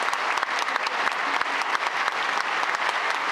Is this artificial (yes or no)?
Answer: no